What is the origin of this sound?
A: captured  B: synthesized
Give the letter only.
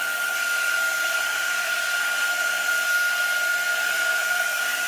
B